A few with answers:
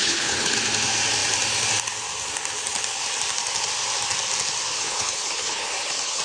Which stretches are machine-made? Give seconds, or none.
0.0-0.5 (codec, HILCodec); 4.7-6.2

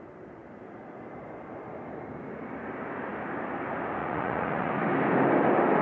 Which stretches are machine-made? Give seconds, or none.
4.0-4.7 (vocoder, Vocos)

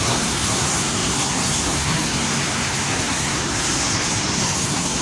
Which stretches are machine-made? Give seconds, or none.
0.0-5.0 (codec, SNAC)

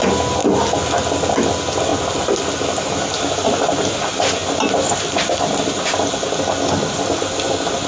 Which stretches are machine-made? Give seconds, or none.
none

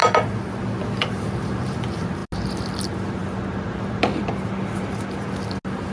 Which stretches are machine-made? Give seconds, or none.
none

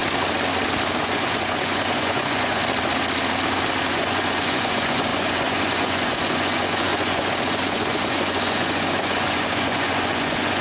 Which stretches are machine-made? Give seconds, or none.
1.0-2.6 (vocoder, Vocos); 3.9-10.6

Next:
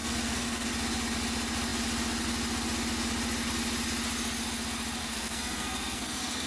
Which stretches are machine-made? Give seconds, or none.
0.0-0.7 (codec, SNAC); 5.0-6.5

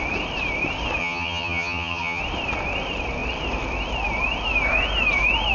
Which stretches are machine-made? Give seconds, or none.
1.0-2.2 (vocoder, HiFi-GAN)